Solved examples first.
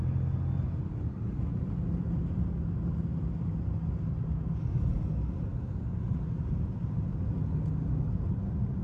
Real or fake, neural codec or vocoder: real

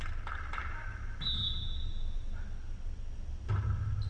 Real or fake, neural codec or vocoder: real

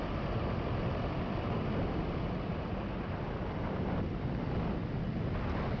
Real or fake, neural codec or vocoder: real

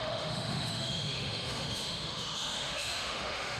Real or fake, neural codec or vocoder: fake, autoencoder, DAC-VAE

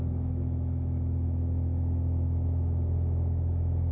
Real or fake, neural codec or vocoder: fake, autoencoder, DAC-VAE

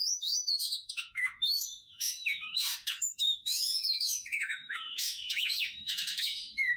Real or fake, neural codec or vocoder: fake, autoencoder, DAC-VAE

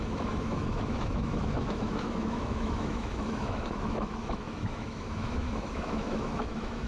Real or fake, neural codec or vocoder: fake, autoencoder, DAC-VAE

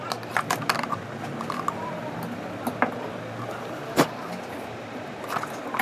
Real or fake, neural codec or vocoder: real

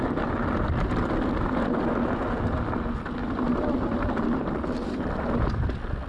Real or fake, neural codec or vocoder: real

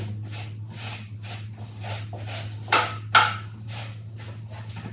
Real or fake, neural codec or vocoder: real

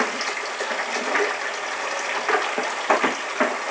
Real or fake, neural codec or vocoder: real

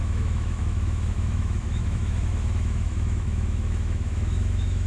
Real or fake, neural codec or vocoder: fake, autoencoder, DAC-VAE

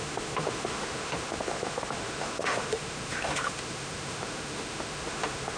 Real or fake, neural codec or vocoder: fake, autoencoder, DAC-VAE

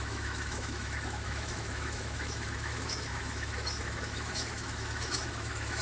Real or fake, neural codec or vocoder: fake, autoencoder, DAC-VAE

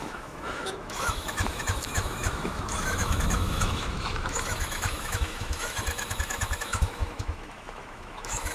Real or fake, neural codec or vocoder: fake, autoencoder, DAC-VAE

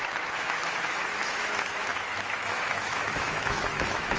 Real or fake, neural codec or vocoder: fake, autoencoder, DAC-VAE